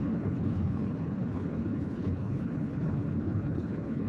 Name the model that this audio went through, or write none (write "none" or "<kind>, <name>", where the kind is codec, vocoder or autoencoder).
codec, HILCodec